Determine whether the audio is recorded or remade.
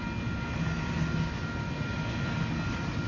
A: recorded